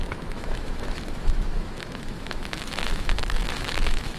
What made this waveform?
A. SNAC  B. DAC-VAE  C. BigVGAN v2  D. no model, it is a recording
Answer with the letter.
B